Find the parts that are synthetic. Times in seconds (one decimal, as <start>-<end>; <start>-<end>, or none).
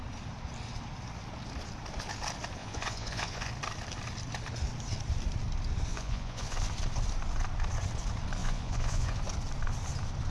2.6-3.5; 5.9-6.6; 8.4-9.2